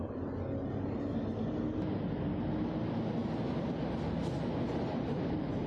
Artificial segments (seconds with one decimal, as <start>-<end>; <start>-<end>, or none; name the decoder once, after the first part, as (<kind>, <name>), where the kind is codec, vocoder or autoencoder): none

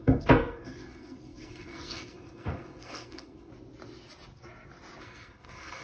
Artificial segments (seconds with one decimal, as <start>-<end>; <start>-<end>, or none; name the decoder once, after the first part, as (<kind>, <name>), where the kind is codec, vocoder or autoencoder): 0.0-3.5 (codec, SNAC); 5.0-5.8

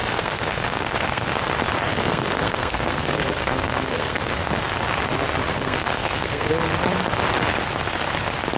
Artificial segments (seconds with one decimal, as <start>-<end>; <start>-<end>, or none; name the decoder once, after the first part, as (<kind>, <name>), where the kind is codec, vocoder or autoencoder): 0.0-1.3 (codec, SNAC); 1.9-4.6; 5.5-6.5

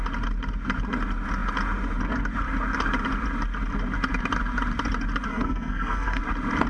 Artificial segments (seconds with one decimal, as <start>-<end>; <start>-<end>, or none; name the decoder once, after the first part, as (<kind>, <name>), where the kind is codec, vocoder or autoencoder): 5.3-6.2 (codec, SNAC)

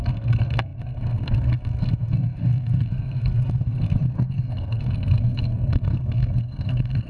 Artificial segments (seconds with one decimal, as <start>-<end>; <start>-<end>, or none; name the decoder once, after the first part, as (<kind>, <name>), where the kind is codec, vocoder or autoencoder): 0.0-7.1 (codec, SNAC)

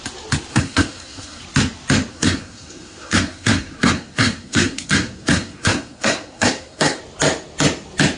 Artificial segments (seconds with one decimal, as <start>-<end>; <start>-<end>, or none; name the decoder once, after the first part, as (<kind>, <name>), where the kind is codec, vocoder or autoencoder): 0.5-1.4 (codec, SNAC); 2.1-7.0

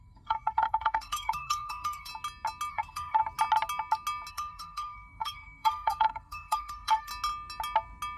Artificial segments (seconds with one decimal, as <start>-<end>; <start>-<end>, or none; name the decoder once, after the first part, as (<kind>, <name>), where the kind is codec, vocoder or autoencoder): 0.0-2.1 (codec, SNAC); 2.7-3.2; 4.3-7.1